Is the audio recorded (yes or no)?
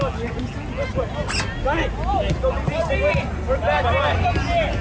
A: yes